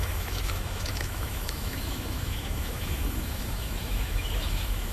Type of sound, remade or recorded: remade